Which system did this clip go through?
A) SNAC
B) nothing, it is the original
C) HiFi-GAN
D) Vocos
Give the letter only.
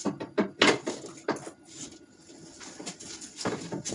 B